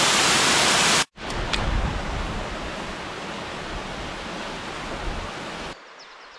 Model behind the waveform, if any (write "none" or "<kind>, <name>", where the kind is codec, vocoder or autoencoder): none